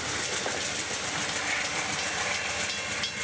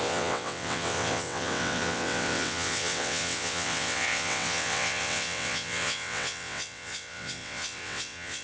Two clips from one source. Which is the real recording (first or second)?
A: first